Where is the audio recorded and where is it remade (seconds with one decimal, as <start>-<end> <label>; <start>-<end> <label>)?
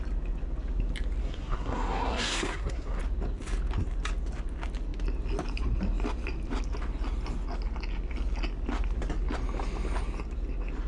0.0-1.2 recorded; 1.2-3.0 remade; 3.0-10.9 recorded